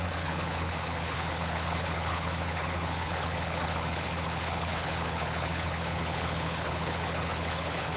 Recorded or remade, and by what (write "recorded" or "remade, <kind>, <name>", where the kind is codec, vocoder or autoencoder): remade, codec, HILCodec